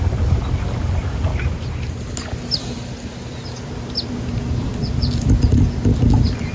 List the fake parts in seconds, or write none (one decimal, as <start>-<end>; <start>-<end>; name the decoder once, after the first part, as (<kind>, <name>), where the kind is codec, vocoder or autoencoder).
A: none